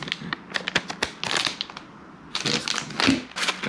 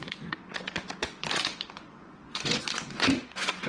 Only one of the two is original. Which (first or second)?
first